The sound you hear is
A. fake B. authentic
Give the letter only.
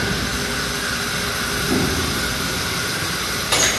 B